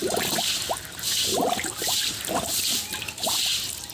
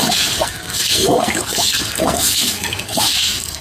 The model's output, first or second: second